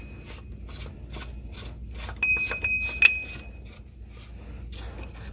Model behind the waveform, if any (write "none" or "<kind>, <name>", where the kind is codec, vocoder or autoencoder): none